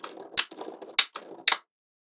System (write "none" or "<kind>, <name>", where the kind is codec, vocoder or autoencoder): none